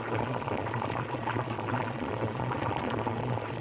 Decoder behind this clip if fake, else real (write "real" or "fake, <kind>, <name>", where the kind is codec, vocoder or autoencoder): fake, vocoder, Vocos